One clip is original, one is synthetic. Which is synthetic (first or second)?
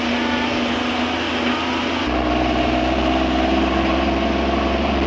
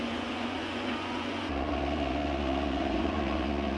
second